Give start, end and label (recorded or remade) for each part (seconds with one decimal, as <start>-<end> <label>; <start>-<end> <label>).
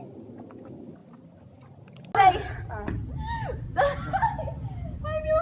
0.0-5.4 recorded